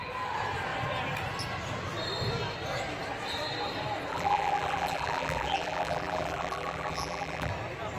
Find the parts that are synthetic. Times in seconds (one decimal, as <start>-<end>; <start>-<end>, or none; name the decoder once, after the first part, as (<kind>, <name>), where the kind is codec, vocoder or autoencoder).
4.1-7.5 (vocoder, BigVGAN v2)